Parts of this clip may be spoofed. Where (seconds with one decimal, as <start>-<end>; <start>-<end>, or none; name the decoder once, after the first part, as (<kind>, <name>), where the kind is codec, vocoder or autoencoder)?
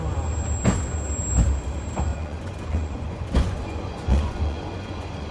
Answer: 2.1-5.3 (vocoder, Vocos)